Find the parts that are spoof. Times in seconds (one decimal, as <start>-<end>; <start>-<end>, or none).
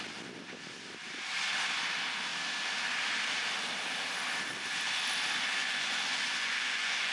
5.6-7.1